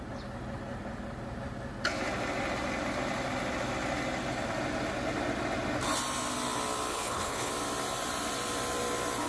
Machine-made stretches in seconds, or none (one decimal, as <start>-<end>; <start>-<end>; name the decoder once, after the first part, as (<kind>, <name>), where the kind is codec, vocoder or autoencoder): 6.9-7.5 (codec, HILCodec)